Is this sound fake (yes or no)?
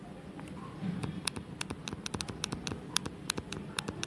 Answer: no